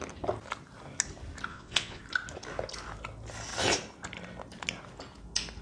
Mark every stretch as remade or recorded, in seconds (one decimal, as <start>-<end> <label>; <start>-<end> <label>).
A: 0.0-1.5 recorded; 1.5-2.0 remade; 2.0-5.6 recorded